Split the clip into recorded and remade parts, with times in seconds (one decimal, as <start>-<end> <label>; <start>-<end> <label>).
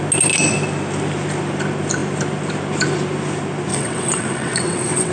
0.0-3.7 recorded; 3.7-5.1 remade